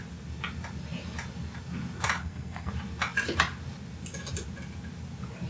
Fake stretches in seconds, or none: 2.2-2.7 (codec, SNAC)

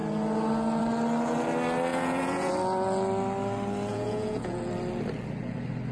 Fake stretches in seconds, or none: 1.9-2.5 (vocoder, Vocos); 3.9-4.6

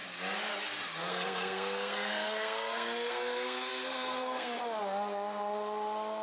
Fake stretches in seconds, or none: 1.1-4.8 (codec, SNAC)

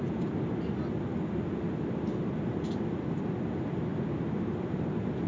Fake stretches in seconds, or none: none

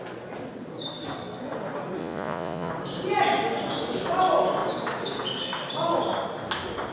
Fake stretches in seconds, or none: 2.0-2.7 (vocoder, Vocos)

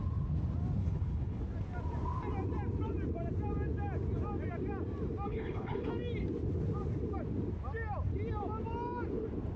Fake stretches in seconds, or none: 0.8-1.4 (codec, HILCodec); 5.3-5.9

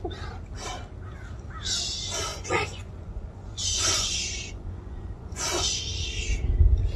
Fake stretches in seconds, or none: 2.3-5.8 (vocoder, Vocos)